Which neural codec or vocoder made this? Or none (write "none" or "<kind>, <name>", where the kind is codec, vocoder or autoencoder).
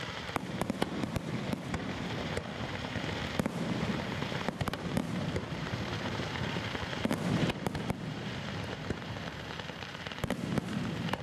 vocoder, BigVGAN v2